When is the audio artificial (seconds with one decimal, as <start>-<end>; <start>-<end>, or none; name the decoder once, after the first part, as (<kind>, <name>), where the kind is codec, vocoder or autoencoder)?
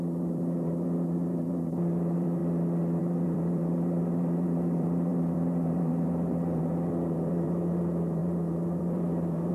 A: 0.0-2.4 (vocoder, BigVGAN v2); 3.0-9.5